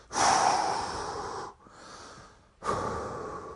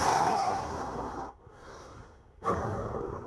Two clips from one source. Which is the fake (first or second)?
second